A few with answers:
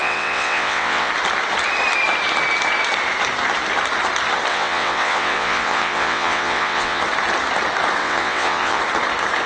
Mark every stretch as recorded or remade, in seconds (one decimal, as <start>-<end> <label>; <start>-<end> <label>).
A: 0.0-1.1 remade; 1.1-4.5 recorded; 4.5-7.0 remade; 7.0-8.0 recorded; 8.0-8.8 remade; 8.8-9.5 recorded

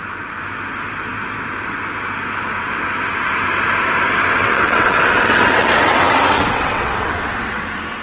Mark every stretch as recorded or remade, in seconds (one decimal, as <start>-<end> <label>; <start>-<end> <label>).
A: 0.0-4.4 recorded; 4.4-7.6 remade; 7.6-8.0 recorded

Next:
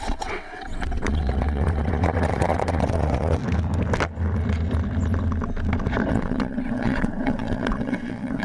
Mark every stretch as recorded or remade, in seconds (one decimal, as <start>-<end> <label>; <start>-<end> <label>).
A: 0.0-3.4 remade; 3.4-6.1 recorded; 6.1-8.4 remade